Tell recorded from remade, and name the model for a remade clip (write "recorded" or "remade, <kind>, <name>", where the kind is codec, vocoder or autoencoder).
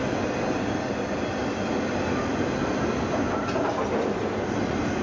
recorded